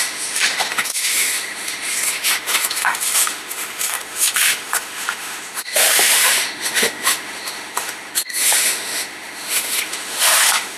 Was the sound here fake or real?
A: fake